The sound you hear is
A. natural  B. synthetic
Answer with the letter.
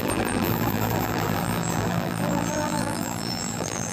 B